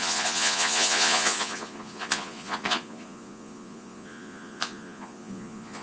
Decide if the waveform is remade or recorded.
remade